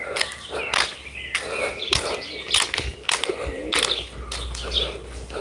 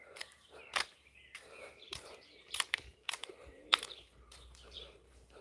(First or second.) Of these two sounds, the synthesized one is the second